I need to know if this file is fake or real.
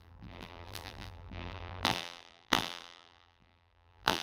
fake